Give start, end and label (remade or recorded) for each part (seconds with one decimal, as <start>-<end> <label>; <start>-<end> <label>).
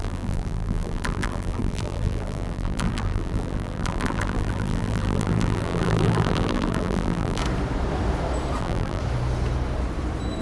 0.0-7.4 remade; 7.4-8.6 recorded; 8.6-9.0 remade; 9.0-10.4 recorded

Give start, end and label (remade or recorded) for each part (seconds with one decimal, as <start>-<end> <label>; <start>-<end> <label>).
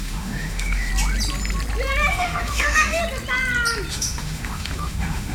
0.0-0.9 remade; 0.9-2.1 recorded; 2.1-3.0 remade; 3.0-3.9 recorded; 3.9-5.3 remade